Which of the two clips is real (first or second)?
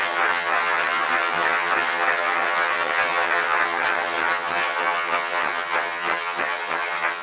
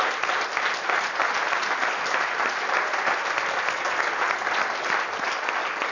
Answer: second